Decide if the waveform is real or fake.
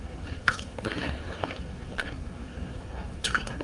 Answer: fake